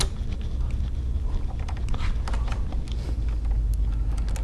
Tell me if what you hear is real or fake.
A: real